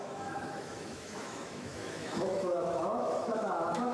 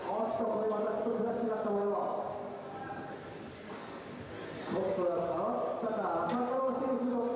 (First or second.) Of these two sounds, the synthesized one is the first